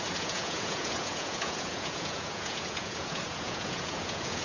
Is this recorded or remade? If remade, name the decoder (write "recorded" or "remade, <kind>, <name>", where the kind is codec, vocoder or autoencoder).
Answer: remade, vocoder, Vocos